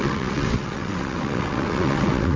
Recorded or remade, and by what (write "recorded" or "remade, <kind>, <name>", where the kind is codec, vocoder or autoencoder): remade, vocoder, WaveNeXt